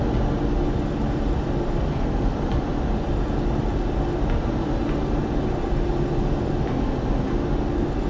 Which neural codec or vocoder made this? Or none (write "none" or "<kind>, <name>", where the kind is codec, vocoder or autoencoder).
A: none